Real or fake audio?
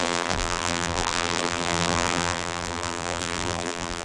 fake